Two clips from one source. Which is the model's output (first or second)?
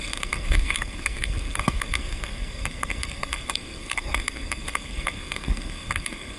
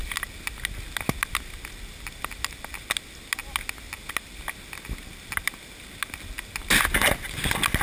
first